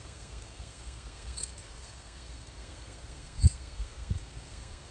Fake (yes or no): yes